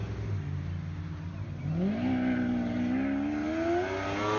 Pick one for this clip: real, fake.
real